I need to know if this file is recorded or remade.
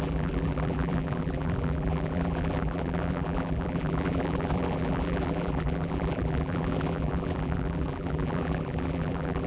remade